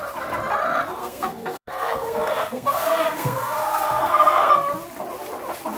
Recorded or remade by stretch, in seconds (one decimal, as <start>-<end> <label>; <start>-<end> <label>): 0.0-1.0 recorded; 1.0-4.5 remade; 4.5-5.8 recorded